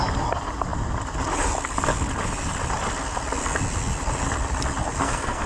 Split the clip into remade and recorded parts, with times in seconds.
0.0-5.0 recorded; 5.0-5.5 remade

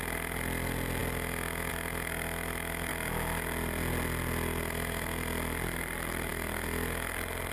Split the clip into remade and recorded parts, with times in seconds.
0.0-7.5 recorded

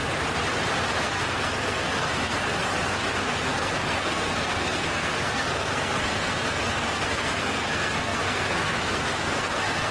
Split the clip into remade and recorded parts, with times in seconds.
0.0-1.0 recorded; 1.0-9.9 remade

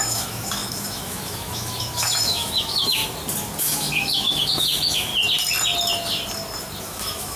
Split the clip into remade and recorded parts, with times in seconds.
0.0-3.0 remade; 3.0-3.6 recorded; 3.6-5.1 remade; 5.1-6.8 recorded; 6.8-7.4 remade

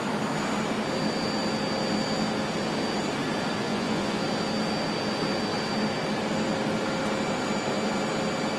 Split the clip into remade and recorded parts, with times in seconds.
0.0-3.6 recorded; 3.6-4.2 remade; 4.2-8.6 recorded